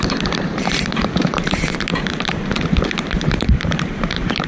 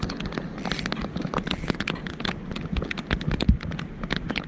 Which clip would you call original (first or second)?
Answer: second